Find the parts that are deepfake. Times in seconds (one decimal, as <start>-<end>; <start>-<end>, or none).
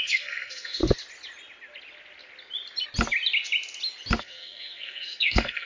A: 0.0-0.8; 4.2-5.7